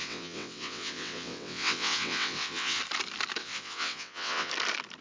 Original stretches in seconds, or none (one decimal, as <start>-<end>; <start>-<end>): 2.8-3.4; 4.5-5.0